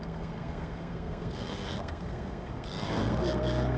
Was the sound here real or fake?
fake